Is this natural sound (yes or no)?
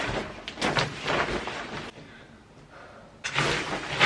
yes